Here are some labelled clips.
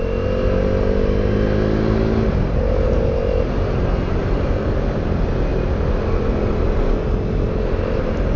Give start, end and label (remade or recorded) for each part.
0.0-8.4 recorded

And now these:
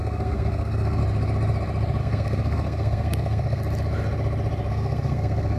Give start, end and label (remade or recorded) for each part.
0.0-1.0 remade; 1.0-2.0 recorded; 2.0-3.6 remade; 3.6-4.7 recorded; 4.7-5.6 remade

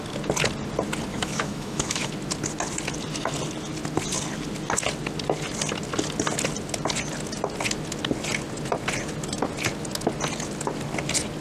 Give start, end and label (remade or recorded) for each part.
0.0-1.1 recorded; 1.1-2.1 remade; 2.1-11.4 recorded

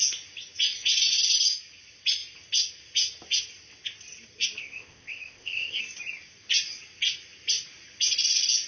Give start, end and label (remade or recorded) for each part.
0.0-4.6 recorded; 4.6-5.8 remade; 5.8-8.7 recorded

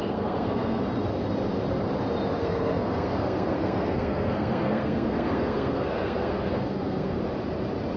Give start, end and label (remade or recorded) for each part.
0.0-0.8 remade; 0.8-2.4 recorded; 2.4-7.2 remade; 7.2-8.0 recorded

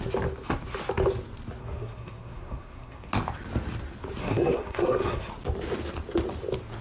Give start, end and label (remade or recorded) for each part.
0.0-1.6 recorded; 1.6-3.1 remade; 3.1-4.2 recorded; 4.2-5.3 remade; 5.3-6.8 recorded

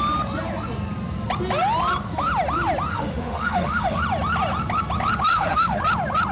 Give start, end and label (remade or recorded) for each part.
0.0-2.9 recorded; 2.9-4.0 remade; 4.0-5.3 recorded; 5.3-5.8 remade; 5.8-6.3 recorded

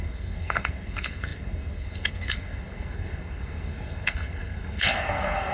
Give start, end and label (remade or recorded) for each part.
0.0-5.5 remade